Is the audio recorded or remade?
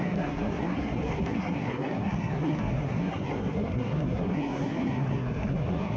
remade